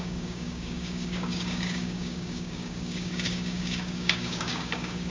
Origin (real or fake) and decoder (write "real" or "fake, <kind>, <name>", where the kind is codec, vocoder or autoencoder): fake, codec, DAC